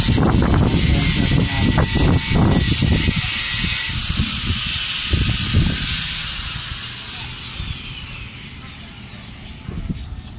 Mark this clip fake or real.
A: real